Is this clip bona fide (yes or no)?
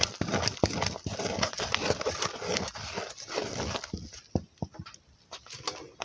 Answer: yes